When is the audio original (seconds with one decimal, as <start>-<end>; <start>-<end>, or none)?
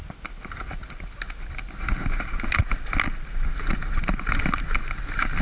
0.0-5.4